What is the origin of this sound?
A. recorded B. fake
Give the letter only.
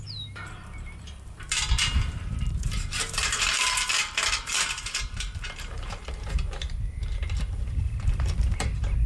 B